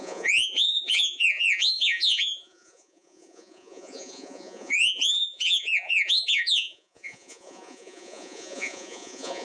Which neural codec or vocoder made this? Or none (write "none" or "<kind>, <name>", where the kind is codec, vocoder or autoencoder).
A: vocoder, Vocos